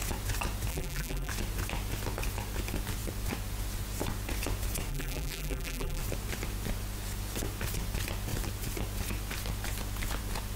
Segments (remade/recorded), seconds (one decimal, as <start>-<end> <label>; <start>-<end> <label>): 0.0-0.7 recorded; 0.7-1.3 remade; 1.3-4.9 recorded; 4.9-6.0 remade; 6.0-10.6 recorded